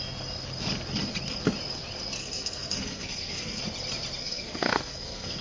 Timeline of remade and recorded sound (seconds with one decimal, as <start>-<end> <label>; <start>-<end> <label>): 0.0-2.2 recorded; 2.2-3.6 remade; 3.6-4.2 recorded; 4.2-5.4 remade